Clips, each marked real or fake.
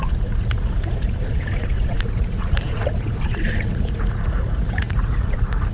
fake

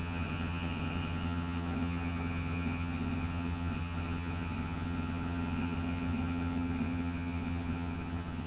fake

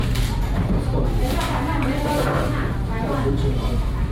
real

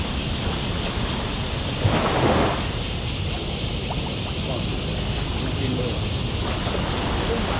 real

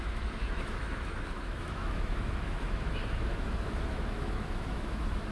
fake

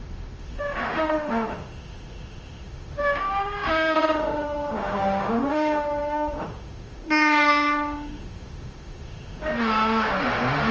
fake